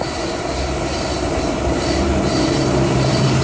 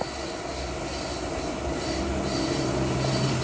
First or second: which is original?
second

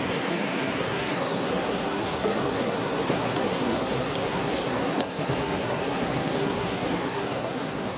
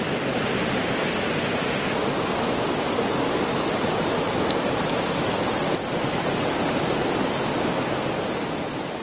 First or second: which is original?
second